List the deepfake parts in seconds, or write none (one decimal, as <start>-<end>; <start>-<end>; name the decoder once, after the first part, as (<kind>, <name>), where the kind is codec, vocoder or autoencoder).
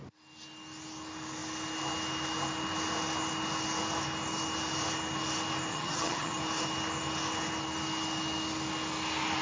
5.7-6.4 (vocoder, HiFi-GAN)